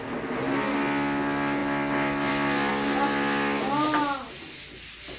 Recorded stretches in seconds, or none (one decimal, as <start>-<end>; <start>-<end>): 0.0-5.2